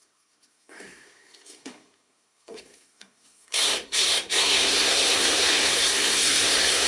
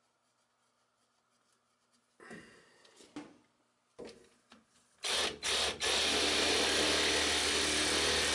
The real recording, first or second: second